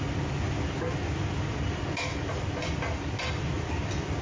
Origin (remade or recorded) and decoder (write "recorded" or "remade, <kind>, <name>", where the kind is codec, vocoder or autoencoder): recorded